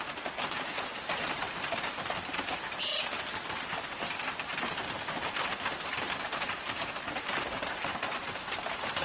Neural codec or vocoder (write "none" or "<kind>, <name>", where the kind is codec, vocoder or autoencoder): vocoder, BigVGAN v2